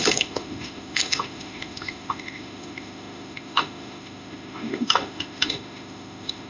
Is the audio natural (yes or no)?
no